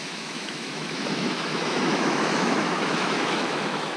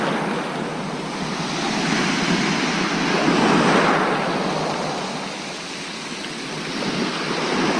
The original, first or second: second